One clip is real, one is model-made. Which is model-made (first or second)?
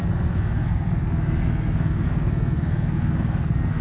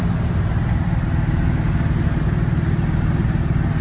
first